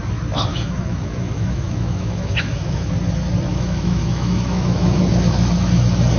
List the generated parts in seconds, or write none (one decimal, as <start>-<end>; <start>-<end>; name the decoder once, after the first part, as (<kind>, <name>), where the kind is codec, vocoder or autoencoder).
0.5-2.9 (autoencoder, DAC-VAE); 3.5-5.0